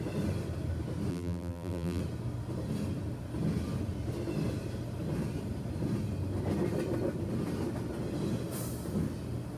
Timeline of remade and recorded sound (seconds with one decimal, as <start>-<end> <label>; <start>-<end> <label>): 0.0-1.1 recorded; 1.1-2.0 remade; 2.0-9.6 recorded